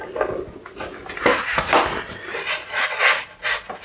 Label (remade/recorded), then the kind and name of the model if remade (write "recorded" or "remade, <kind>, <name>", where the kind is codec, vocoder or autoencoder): recorded